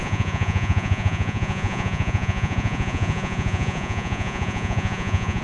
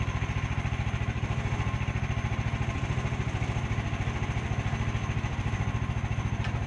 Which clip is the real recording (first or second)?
second